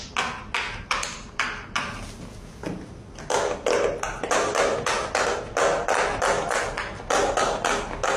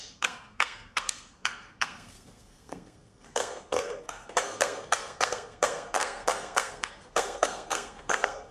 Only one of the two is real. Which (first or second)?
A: first